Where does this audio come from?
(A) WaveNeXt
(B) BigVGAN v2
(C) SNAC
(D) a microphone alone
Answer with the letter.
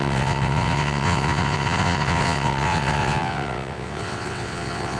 A